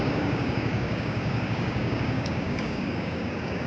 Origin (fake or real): fake